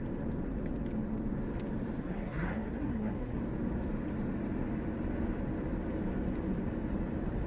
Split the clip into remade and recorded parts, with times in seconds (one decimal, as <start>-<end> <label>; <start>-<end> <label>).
0.0-2.0 recorded; 2.0-3.4 remade; 3.4-7.5 recorded